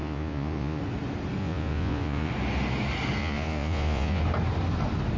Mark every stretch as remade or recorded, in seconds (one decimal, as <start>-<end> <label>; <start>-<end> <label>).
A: 0.0-0.8 remade; 0.8-1.4 recorded; 1.4-2.3 remade; 2.3-3.2 recorded; 3.2-4.2 remade; 4.2-5.2 recorded